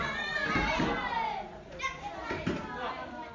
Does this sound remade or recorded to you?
recorded